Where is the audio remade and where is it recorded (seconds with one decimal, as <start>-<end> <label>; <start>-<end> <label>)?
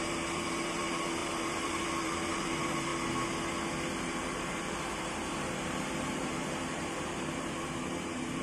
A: 0.0-2.9 remade; 2.9-4.0 recorded; 4.0-8.4 remade